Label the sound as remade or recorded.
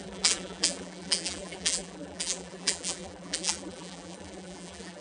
remade